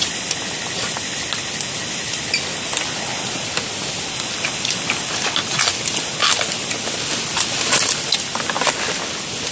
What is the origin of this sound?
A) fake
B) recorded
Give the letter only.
B